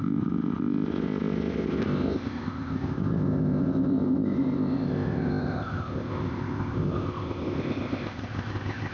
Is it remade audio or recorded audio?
remade